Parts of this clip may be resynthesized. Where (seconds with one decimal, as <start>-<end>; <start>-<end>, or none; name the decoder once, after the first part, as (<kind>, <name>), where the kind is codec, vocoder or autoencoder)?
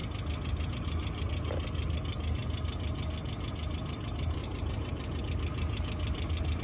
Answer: 4.4-5.2 (vocoder, BigVGAN v2)